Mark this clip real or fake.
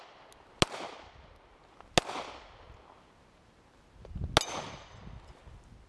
real